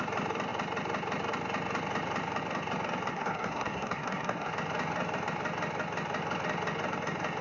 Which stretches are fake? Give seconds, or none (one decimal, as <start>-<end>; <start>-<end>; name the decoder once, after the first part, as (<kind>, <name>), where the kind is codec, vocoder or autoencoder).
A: 3.1-4.5 (codec, SNAC)